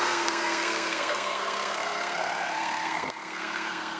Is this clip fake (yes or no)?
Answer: yes